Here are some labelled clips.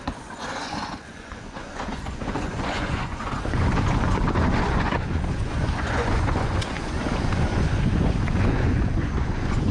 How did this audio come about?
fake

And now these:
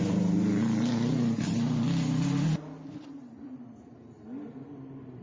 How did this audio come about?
real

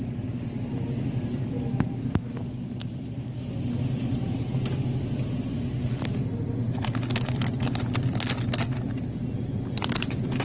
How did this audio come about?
real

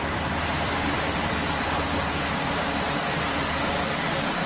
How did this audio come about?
fake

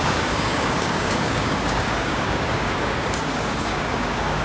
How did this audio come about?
fake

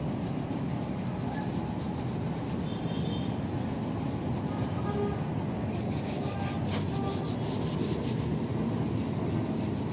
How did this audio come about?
real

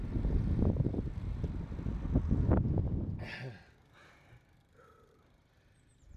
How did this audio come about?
real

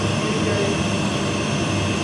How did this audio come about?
real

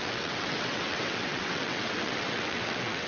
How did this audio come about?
fake